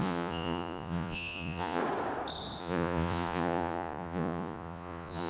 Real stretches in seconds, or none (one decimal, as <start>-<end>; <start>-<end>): 1.8-2.6